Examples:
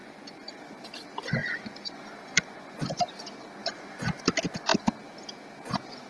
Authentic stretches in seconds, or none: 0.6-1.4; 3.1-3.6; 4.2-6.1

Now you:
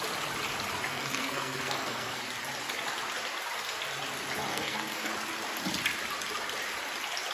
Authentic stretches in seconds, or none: 0.0-0.9; 2.2-4.5; 5.1-7.3